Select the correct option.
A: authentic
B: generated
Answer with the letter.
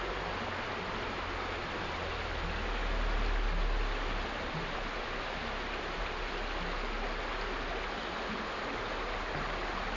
A